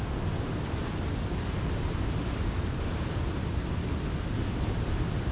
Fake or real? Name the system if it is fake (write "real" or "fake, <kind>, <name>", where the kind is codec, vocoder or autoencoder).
real